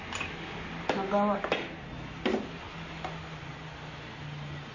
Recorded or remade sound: recorded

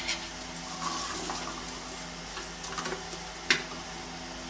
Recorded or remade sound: recorded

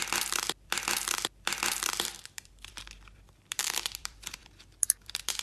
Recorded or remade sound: remade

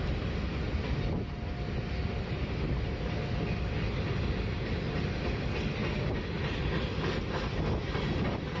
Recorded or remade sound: recorded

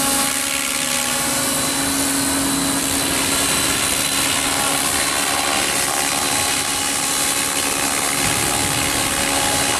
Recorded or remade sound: recorded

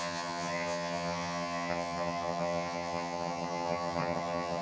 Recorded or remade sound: remade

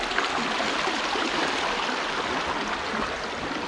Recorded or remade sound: recorded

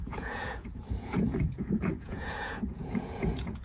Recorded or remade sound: remade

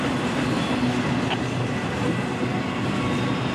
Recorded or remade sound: recorded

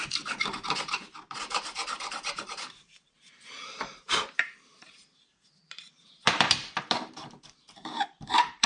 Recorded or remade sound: remade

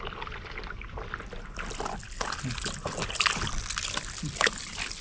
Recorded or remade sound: recorded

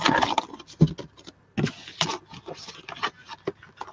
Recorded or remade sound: recorded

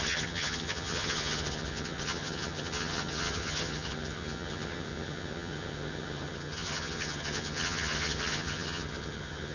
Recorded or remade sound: remade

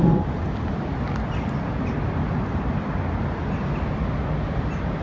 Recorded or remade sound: recorded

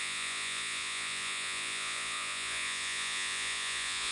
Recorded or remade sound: remade